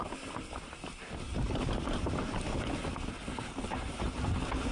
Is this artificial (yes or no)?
no